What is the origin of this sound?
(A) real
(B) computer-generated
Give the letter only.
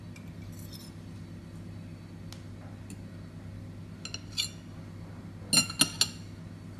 A